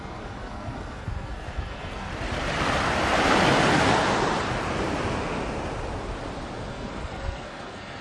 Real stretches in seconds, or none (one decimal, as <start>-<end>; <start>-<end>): 2.1-6.7